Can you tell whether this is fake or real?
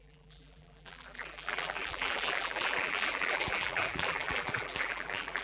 fake